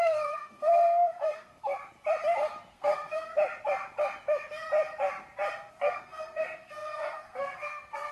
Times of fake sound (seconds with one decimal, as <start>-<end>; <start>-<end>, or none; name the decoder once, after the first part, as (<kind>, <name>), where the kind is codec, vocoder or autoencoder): 0.0-1.5 (codec, SNAC); 2.7-3.3; 5.7-8.1